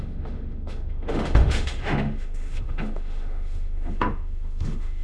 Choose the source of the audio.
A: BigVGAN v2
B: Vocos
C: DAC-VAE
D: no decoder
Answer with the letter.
C